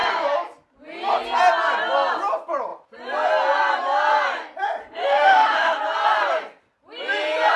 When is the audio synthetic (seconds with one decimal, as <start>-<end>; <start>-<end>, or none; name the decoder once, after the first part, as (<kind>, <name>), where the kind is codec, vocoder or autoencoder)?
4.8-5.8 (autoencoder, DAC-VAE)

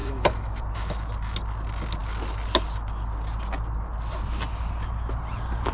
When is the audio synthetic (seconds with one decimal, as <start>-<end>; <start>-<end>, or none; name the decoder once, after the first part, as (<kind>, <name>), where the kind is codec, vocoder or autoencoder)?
0.0-0.6 (autoencoder, DAC-VAE)

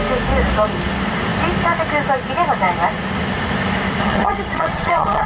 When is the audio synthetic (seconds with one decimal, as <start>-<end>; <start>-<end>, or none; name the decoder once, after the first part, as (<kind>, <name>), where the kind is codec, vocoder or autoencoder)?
4.0-5.3 (vocoder, HiFi-GAN)

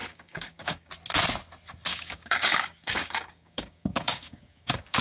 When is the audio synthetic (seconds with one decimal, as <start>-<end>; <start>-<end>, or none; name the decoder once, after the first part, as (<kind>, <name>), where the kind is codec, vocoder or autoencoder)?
0.0-0.9 (codec, DAC); 1.9-5.0

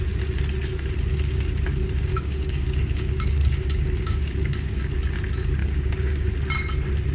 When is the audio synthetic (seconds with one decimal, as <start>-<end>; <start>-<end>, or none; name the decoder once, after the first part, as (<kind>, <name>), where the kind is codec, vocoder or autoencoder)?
2.1-4.8 (codec, DAC); 5.6-6.3